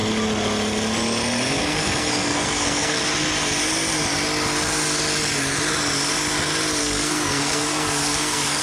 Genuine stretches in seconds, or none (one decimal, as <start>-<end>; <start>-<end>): 0.0-1.6; 3.0-6.8